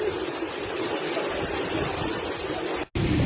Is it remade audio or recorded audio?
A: recorded